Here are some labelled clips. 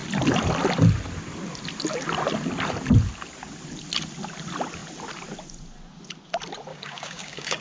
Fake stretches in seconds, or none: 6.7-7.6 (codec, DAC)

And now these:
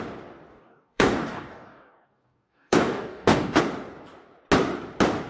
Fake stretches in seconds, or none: 0.5-3.6 (codec, DAC)

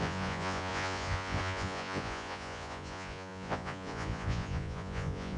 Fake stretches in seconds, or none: 0.0-5.4 (vocoder, Vocos)

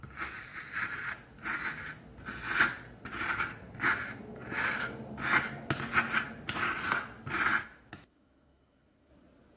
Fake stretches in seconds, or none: 7.6-9.1 (autoencoder, DAC-VAE)

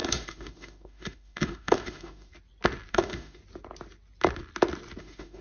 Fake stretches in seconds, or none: 0.0-2.3 (autoencoder, DAC-VAE); 2.9-3.4; 5.0-5.4